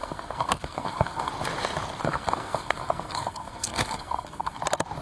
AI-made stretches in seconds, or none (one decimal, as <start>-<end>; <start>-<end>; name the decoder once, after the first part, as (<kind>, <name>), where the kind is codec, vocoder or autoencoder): 0.0-1.3 (codec, SNAC); 2.0-4.6